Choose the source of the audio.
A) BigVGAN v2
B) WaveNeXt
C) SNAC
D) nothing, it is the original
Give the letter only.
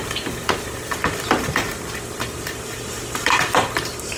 A